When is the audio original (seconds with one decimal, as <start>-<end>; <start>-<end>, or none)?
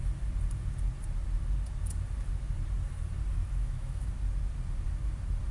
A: 0.0-3.4; 4.1-5.5